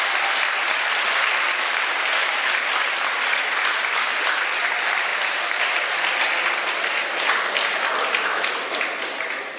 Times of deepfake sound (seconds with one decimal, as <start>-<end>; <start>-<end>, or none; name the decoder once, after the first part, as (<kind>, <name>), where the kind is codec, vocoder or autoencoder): 0.0-5.1 (vocoder, BigVGAN v2); 8.8-9.6